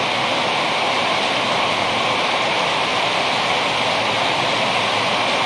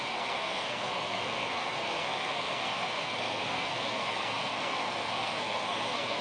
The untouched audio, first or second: first